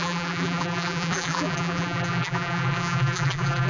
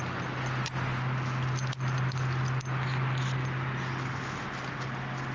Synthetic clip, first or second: first